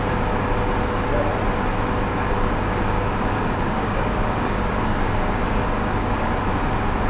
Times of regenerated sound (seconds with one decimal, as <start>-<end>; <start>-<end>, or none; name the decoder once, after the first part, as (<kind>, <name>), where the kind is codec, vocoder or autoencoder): 2.1-6.4 (codec, DAC)